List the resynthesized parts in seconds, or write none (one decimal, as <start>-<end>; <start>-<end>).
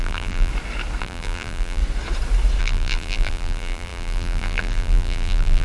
0.0-0.5; 1.0-1.8; 2.6-5.6